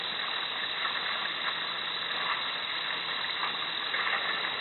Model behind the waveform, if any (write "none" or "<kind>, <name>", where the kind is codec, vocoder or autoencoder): none